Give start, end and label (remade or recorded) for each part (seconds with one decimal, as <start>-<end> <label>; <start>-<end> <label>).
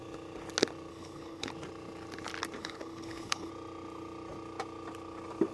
0.0-0.9 recorded; 0.9-1.5 remade; 1.5-2.6 recorded; 2.6-3.5 remade; 3.5-5.5 recorded